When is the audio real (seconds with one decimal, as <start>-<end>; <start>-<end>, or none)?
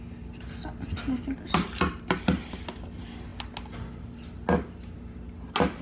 0.0-5.8